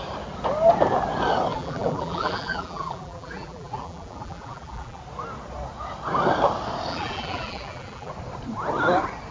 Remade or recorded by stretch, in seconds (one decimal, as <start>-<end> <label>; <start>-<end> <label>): 0.0-1.5 recorded; 1.5-5.0 remade; 5.0-6.9 recorded; 6.9-8.1 remade; 8.1-9.3 recorded